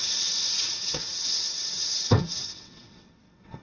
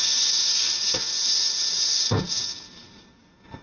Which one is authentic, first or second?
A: second